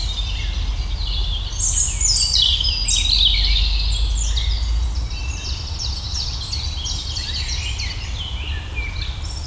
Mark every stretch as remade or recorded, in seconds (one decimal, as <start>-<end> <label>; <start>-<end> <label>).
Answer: 0.0-9.5 recorded